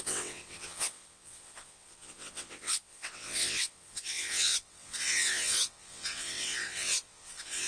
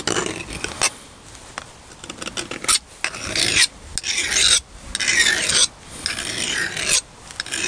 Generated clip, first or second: first